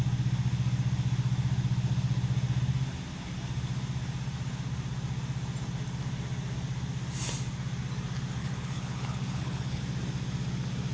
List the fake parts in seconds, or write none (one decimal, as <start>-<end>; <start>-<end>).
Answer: 8.4-9.8